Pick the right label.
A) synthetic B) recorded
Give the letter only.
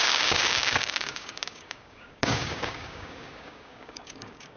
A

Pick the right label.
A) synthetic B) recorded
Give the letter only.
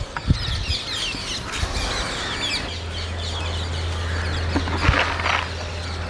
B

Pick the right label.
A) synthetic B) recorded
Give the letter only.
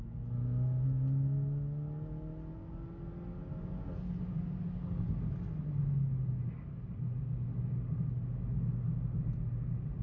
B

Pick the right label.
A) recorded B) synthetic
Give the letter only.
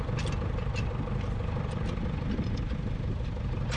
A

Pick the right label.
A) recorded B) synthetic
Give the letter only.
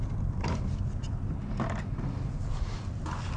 A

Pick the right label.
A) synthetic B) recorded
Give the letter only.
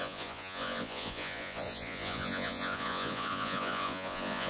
A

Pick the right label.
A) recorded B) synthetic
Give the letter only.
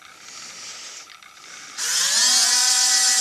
A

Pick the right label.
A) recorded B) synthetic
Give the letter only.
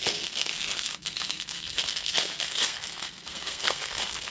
B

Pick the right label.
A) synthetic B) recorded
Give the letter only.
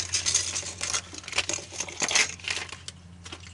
B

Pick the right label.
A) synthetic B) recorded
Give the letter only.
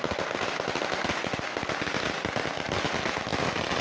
B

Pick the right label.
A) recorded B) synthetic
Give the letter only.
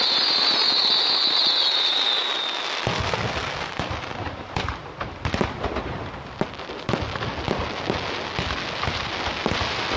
A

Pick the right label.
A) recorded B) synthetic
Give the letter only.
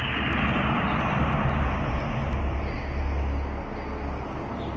A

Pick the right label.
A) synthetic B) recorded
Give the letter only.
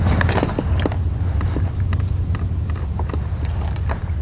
B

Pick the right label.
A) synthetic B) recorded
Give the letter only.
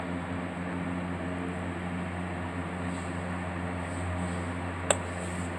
B